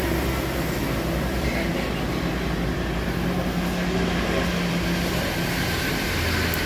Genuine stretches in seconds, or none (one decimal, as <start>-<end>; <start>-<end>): 0.0-6.7

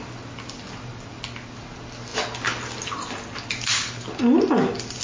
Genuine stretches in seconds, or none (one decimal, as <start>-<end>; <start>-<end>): 0.0-5.0

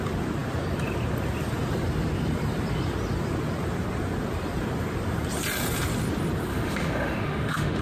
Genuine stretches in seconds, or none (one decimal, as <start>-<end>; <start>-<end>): 0.0-6.5

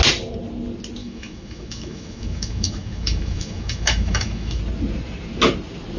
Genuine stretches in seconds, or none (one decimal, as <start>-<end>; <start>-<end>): 0.0-1.0; 4.6-6.0

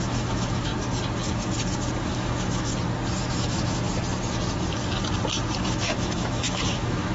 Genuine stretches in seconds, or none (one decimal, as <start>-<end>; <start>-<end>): 0.7-2.1; 2.7-3.3; 3.9-5.6

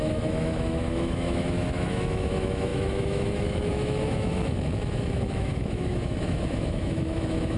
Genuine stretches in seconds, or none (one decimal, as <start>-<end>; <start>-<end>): none